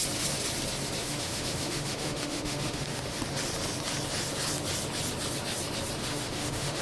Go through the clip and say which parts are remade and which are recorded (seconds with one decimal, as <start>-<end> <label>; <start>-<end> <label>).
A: 0.0-1.0 recorded; 1.0-3.2 remade; 3.2-6.0 recorded; 6.0-6.8 remade